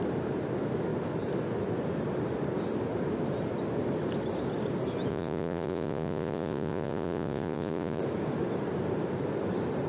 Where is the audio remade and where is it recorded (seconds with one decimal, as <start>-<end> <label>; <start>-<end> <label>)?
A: 0.0-5.1 recorded; 5.1-8.0 remade; 8.0-9.9 recorded